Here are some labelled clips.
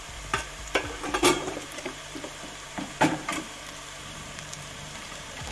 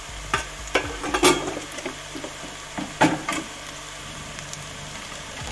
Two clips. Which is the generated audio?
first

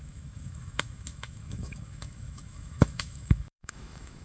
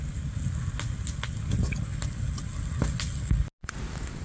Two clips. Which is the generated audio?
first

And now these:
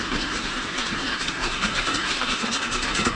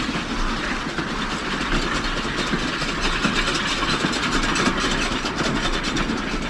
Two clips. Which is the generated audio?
first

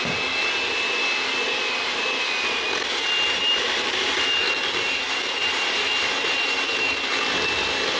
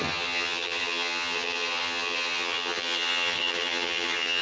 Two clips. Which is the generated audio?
second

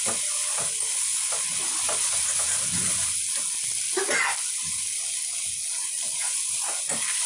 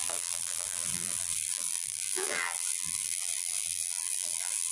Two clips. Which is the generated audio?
second